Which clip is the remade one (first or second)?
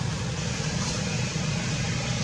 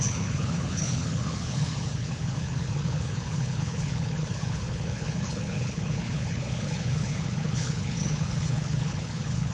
second